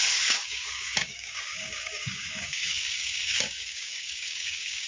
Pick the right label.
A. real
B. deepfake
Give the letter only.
B